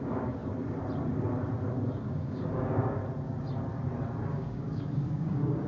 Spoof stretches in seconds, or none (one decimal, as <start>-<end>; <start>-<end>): 0.0-0.4; 2.0-3.0; 4.3-5.7